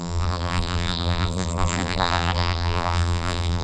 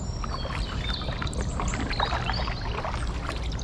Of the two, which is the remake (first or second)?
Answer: first